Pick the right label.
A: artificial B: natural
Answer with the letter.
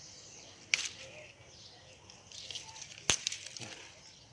B